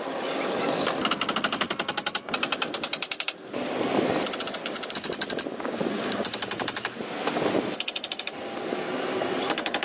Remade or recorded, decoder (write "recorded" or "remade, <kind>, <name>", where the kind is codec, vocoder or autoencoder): remade, vocoder, BigVGAN v2